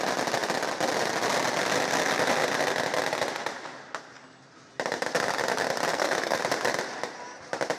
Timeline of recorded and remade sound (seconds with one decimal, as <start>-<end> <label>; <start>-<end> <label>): 0.0-5.9 recorded; 5.9-6.4 remade; 6.4-7.8 recorded